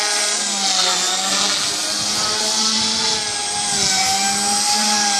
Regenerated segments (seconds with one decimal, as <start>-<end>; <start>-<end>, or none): 1.8-3.1